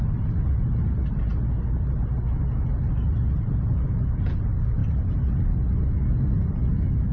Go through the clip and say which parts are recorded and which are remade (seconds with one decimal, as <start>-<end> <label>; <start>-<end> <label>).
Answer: 0.0-4.8 recorded; 4.8-5.8 remade; 5.8-7.1 recorded